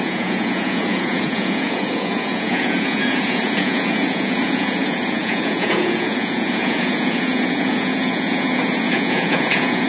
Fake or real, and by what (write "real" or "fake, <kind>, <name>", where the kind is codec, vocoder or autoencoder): fake, vocoder, Vocos